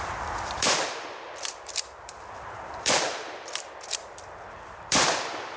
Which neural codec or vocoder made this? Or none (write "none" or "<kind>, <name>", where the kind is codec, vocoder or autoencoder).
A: vocoder, BigVGAN v2